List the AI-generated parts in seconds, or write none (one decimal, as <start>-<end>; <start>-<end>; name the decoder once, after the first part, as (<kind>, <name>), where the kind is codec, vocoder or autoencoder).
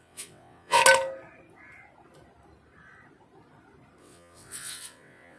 0.0-0.8 (vocoder, WaveNeXt); 4.0-5.4